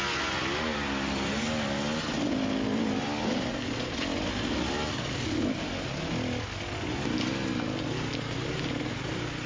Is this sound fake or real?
real